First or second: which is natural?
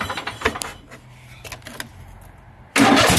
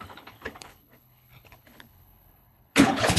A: first